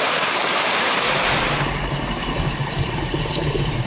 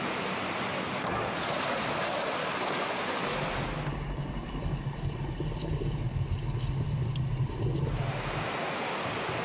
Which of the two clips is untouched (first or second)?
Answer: second